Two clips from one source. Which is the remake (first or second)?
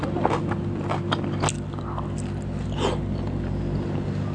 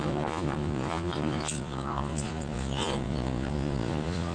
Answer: second